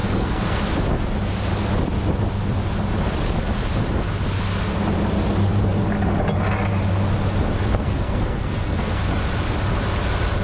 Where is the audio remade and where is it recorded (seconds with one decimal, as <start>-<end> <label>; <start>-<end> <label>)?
0.0-0.6 remade; 0.6-7.7 recorded; 7.7-9.0 remade; 9.0-10.4 recorded